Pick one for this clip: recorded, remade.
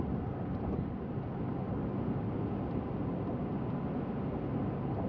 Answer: recorded